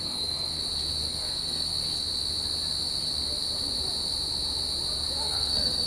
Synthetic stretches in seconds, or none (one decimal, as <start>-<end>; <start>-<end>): 0.0-0.6; 1.1-1.7; 5.2-5.9